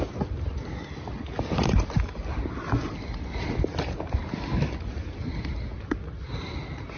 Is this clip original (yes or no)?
yes